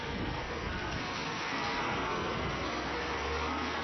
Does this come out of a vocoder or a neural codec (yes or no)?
yes